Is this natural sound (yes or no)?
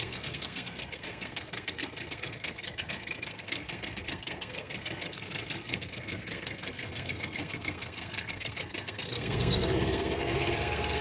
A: no